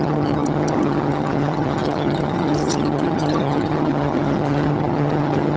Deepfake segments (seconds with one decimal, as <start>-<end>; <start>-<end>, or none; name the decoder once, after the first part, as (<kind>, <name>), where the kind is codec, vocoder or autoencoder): 0.0-5.6 (vocoder, HiFi-GAN)

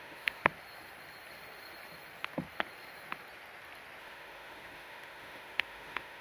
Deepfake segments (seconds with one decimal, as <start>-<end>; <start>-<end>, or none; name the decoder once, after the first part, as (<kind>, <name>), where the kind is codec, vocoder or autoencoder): 0.0-0.4 (autoencoder, DAC-VAE); 4.0-6.2

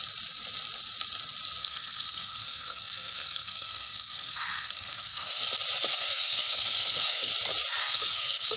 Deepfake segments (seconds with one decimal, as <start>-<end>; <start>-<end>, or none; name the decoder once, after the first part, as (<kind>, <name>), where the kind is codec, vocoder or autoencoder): 1.6-5.4 (codec, SNAC); 5.9-7.3; 7.8-8.6

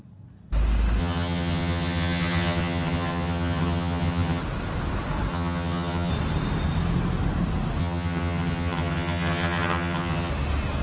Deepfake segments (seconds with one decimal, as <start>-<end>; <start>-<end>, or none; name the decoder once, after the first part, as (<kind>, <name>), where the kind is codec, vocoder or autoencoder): 1.0-4.4 (vocoder, HiFi-GAN); 5.3-6.1; 7.8-10.3

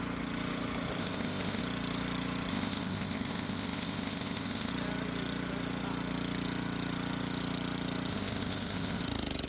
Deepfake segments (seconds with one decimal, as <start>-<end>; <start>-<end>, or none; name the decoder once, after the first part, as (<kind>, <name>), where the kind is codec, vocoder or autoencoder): 1.0-1.6 (codec, ZipCodec); 2.5-4.7; 8.1-9.0

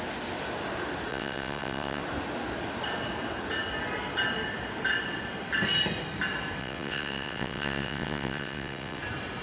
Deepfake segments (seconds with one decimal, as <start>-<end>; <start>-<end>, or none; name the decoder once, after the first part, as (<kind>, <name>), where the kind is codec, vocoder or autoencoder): 1.1-2.0 (vocoder, WaveNeXt); 6.6-9.0

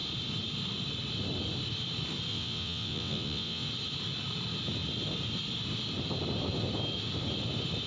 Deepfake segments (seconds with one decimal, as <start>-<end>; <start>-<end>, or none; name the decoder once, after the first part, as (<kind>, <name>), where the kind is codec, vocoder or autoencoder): 2.3-3.7 (vocoder, WaveNeXt)

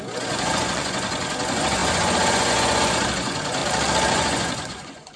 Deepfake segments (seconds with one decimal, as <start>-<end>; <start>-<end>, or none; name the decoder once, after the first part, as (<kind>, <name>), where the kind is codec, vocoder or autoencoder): 0.0-3.6 (vocoder, Vocos); 4.1-5.2